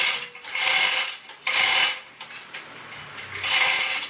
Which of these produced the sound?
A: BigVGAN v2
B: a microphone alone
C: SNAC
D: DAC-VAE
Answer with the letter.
B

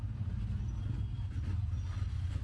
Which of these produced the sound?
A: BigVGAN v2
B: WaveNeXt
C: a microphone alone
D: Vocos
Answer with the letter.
C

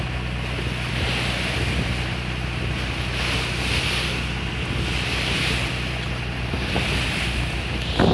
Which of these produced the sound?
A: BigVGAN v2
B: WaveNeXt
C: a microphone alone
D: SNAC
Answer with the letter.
C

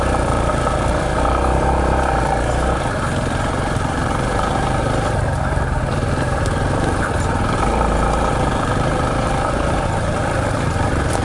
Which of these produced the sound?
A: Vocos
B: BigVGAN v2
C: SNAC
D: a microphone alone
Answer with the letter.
B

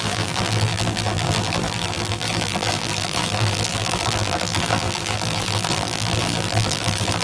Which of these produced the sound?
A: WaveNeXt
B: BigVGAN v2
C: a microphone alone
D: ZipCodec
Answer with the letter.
B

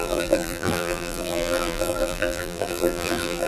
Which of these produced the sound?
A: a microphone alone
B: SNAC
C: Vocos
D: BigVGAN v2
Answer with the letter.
D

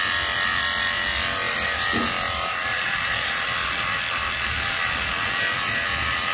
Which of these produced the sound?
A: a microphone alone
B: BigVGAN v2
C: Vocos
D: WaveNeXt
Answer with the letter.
B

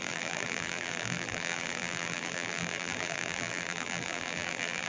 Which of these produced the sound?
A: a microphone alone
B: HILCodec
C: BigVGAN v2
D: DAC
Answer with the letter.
C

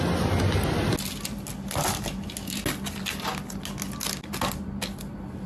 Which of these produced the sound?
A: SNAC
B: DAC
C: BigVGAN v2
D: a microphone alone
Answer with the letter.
D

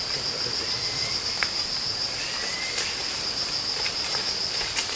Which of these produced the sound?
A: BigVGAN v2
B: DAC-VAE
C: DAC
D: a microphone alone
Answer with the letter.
A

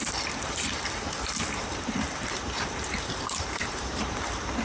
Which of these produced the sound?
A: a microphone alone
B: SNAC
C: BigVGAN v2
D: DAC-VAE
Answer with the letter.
C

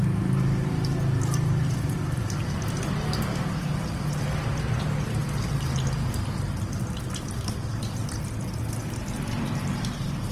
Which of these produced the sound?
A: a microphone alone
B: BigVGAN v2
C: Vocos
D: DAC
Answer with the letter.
A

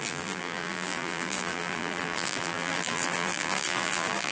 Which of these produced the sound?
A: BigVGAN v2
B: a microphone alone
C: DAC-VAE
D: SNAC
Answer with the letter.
A